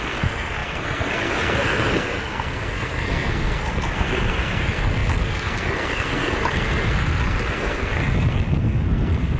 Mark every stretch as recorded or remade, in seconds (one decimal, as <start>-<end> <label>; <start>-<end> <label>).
0.0-9.4 remade